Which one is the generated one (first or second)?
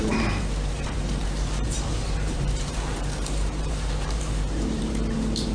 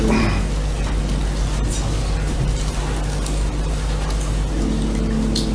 first